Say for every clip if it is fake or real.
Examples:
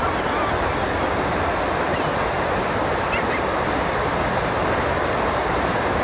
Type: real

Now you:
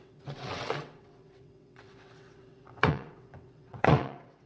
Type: fake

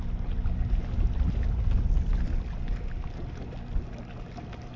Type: real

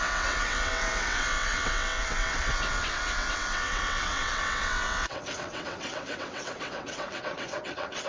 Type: fake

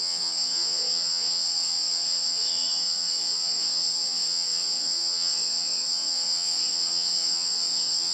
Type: fake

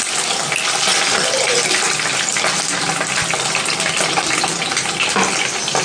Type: real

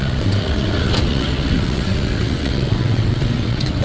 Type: fake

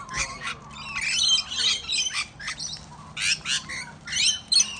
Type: real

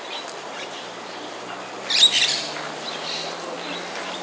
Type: real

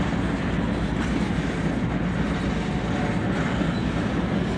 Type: real